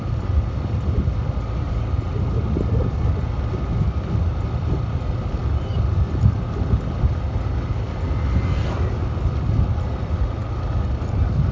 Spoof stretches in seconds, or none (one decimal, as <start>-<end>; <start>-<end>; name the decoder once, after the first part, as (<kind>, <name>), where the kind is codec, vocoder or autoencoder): none